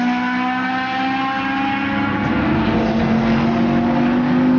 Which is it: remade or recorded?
recorded